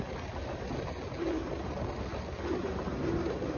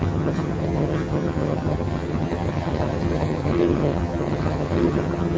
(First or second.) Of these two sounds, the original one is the first